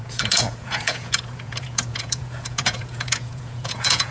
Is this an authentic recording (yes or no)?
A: no